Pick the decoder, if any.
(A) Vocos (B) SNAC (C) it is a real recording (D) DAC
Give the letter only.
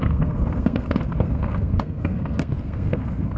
B